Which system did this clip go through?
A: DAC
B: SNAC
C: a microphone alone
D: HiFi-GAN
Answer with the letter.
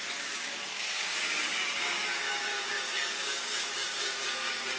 A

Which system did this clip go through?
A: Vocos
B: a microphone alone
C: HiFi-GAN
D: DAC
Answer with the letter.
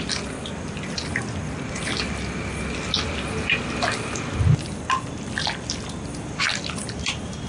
B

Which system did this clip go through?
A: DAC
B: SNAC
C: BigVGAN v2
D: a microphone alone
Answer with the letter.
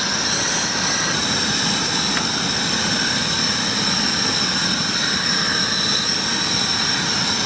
D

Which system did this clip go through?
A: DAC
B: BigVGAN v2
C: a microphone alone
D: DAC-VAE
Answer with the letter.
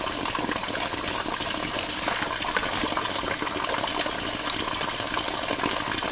C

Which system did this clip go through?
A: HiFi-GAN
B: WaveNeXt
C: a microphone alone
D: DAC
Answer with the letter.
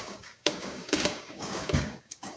D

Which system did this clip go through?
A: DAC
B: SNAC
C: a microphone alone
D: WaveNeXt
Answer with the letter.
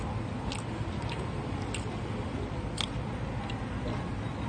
C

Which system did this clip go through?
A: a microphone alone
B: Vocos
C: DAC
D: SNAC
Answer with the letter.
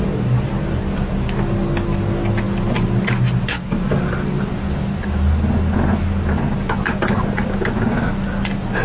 A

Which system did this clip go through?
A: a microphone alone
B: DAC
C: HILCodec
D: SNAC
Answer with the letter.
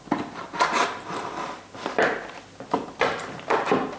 A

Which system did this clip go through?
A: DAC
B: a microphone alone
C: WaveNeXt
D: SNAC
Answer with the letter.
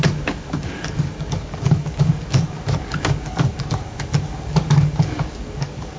A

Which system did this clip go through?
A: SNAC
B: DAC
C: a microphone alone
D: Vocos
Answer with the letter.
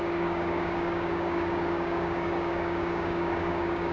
B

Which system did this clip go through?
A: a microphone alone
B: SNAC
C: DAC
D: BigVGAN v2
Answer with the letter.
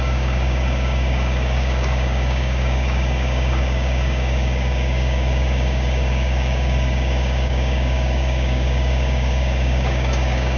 C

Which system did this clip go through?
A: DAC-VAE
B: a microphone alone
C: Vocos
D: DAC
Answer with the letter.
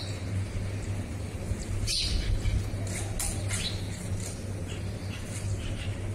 B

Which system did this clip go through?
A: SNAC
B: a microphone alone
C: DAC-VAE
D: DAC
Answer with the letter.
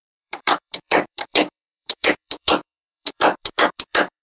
D